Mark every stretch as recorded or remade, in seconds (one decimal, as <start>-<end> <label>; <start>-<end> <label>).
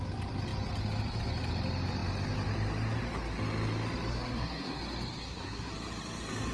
0.0-4.1 recorded; 4.1-4.8 remade; 4.8-5.2 recorded; 5.2-5.7 remade; 5.7-6.5 recorded